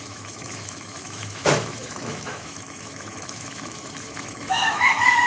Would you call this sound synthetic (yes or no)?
yes